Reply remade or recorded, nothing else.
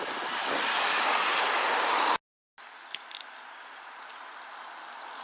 recorded